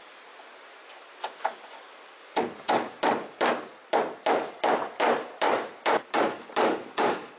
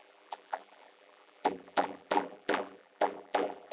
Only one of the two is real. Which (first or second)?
first